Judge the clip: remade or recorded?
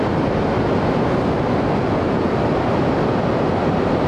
recorded